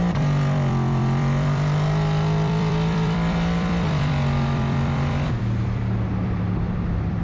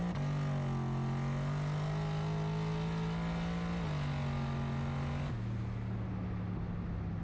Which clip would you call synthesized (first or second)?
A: first